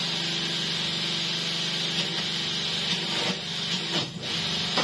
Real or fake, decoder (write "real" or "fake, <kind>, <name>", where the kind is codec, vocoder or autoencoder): real